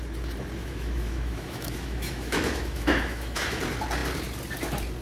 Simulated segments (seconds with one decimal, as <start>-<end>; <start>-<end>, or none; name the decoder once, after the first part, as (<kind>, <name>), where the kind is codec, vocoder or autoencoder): 0.6-3.6 (autoencoder, DAC-VAE)